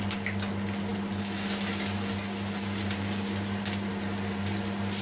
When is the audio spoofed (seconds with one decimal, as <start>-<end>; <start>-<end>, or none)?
none